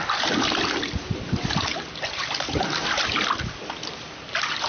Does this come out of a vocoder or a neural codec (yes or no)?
no